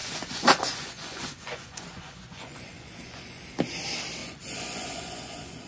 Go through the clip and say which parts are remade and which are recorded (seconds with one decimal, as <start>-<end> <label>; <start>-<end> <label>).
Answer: 0.0-3.4 remade; 3.4-4.2 recorded; 4.2-5.7 remade